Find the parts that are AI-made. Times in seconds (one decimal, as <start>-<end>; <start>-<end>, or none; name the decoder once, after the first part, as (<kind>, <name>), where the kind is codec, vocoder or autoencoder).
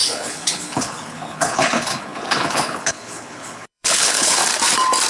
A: 0.0-4.4 (codec, HILCodec)